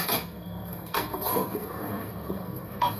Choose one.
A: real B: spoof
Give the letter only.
B